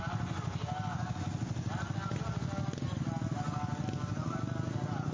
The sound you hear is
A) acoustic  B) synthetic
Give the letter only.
A